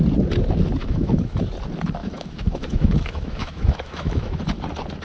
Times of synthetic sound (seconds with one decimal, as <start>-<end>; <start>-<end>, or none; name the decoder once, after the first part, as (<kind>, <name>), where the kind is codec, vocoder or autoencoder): 0.8-1.4 (autoencoder, DAC-VAE); 2.0-4.4